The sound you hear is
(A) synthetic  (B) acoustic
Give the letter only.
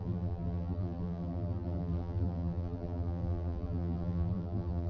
A